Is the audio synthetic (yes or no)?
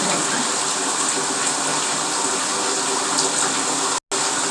no